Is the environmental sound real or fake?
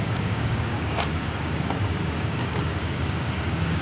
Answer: fake